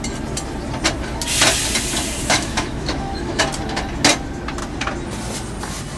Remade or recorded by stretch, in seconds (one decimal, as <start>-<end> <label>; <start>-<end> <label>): 0.0-2.2 recorded; 2.2-3.4 remade; 3.4-6.0 recorded